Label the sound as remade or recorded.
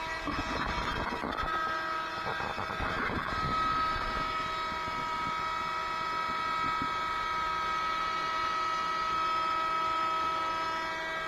recorded